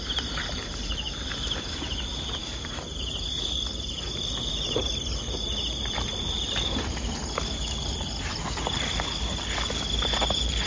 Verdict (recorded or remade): recorded